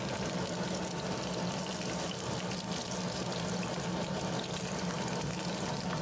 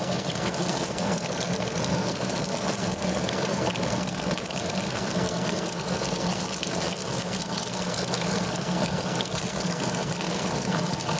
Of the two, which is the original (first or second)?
first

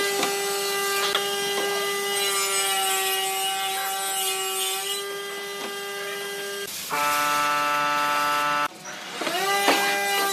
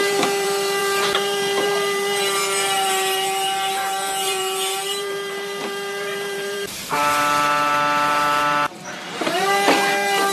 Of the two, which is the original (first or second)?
first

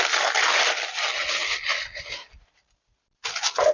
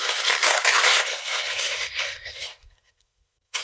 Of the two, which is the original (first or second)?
first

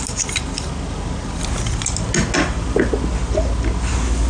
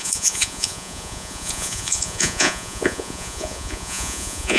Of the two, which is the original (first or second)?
first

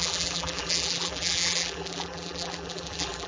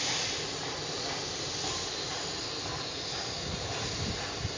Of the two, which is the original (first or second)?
second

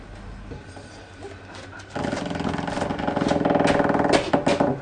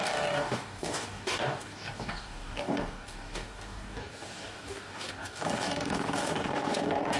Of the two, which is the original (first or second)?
first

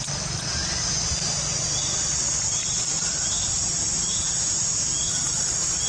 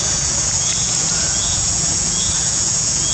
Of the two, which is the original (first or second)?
first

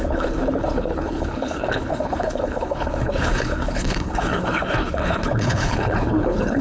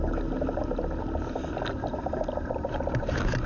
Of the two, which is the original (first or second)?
second